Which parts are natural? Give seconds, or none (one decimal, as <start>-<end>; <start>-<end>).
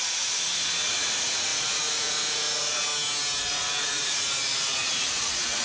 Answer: 2.9-3.4